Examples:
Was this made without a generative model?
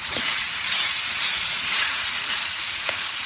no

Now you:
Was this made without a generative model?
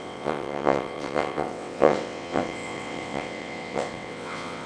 no